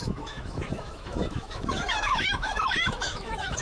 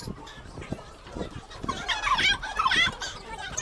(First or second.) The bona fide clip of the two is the second